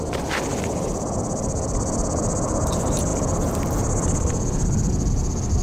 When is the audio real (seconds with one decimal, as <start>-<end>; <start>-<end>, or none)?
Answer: 0.0-0.5; 1.2-5.6